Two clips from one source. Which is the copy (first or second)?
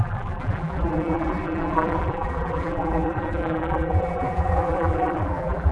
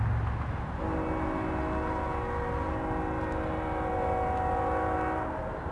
first